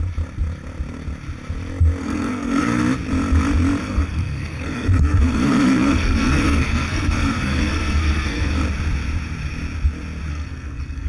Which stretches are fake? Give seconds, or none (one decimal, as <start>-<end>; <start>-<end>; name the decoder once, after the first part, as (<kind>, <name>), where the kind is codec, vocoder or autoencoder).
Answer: 2.0-2.8 (codec, SNAC); 3.8-8.5; 10.3-11.1

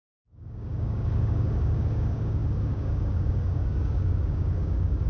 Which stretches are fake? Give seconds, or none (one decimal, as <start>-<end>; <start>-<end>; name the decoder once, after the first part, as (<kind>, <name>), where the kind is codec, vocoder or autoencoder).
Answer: 0.0-5.1 (codec, DAC)